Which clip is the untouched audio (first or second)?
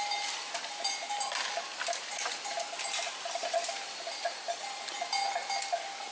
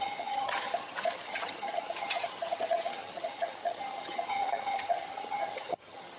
first